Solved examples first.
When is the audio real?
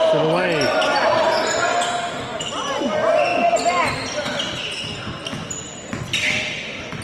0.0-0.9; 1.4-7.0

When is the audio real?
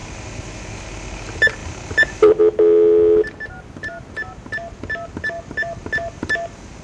0.0-1.6; 2.4-6.8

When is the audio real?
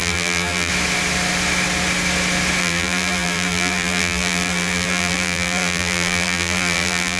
0.7-2.6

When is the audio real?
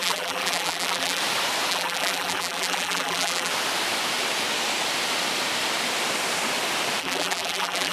1.2-1.7; 3.5-7.0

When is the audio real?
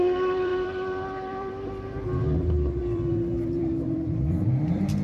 none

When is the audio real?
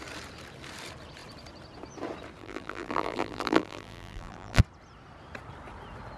0.0-2.4; 4.6-6.2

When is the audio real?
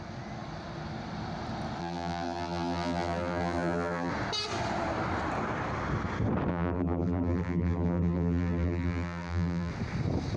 0.0-1.8; 4.1-6.5; 9.7-10.4